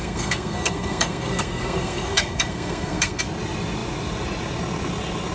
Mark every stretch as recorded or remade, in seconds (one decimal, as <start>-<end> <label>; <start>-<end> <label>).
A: 0.0-3.2 remade; 3.2-5.3 recorded